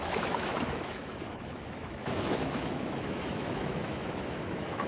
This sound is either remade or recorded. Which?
remade